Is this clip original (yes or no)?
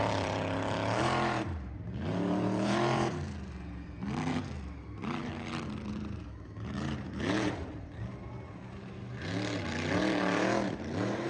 no